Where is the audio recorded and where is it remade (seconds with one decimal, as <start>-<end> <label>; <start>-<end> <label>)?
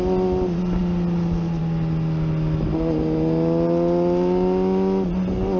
0.0-5.6 recorded